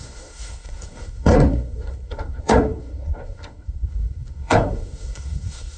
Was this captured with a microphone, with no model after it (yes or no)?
no